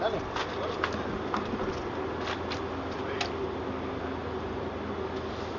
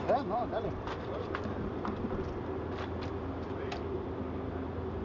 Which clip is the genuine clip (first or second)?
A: first